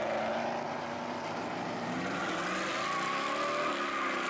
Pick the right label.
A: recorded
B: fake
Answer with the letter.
A